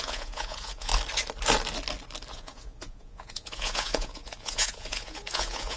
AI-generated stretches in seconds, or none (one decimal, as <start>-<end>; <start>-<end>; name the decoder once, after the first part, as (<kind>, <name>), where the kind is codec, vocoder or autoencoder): 0.0-0.9 (vocoder, Vocos); 2.3-5.8